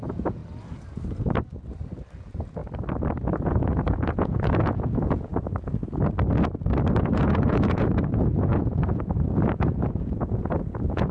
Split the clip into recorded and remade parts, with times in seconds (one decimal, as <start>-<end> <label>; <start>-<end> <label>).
0.0-0.4 remade; 0.4-2.2 recorded; 2.2-2.6 remade; 2.6-3.3 recorded; 3.3-5.3 remade; 5.3-7.0 recorded; 7.0-11.1 remade